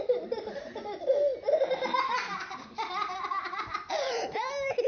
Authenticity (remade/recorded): remade